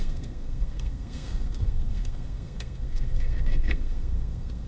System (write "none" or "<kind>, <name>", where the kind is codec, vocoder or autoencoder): codec, SNAC